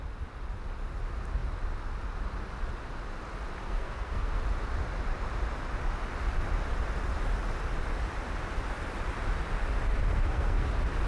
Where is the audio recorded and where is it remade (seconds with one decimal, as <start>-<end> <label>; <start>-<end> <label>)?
0.0-3.6 recorded; 3.6-4.4 remade; 4.4-10.0 recorded; 10.0-10.7 remade; 10.7-11.1 recorded

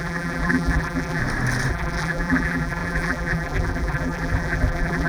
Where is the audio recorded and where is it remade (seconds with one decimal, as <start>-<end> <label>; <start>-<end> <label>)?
0.0-1.2 remade; 1.2-1.7 recorded; 1.7-5.1 remade

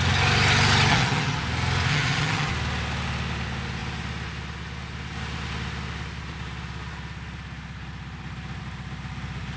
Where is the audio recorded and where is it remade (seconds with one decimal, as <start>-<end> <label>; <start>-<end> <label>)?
0.0-0.9 recorded; 0.9-1.4 remade; 1.4-1.9 recorded; 1.9-2.5 remade; 2.5-9.6 recorded